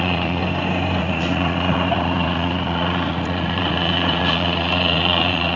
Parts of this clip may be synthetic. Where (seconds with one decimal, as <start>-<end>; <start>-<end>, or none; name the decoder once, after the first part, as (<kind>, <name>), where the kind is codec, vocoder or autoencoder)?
0.0-0.4 (vocoder, Vocos); 1.0-5.6